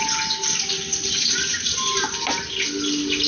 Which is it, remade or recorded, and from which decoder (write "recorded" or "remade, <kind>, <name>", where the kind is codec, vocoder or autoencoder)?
recorded